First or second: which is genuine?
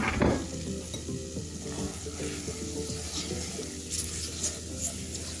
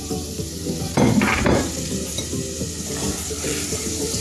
first